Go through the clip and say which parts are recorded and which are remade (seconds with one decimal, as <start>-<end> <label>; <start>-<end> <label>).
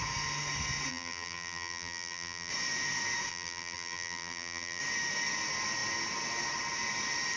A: 0.0-0.9 recorded; 0.9-2.5 remade; 2.5-3.3 recorded; 3.3-4.8 remade; 4.8-7.4 recorded